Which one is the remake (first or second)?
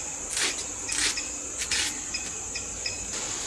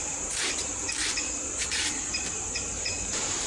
second